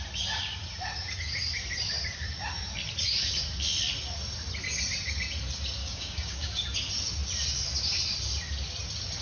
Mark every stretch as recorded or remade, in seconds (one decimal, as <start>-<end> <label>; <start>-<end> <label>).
0.0-5.8 recorded; 5.8-6.5 remade; 6.5-9.2 recorded